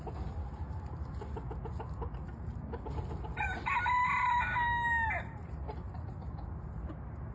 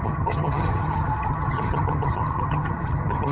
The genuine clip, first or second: first